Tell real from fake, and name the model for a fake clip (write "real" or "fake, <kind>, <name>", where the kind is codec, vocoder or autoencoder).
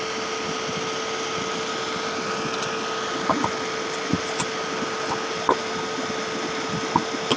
real